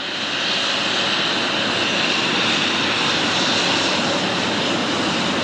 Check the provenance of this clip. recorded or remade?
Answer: recorded